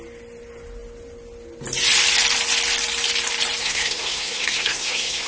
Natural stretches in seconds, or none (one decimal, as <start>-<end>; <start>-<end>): 0.0-3.6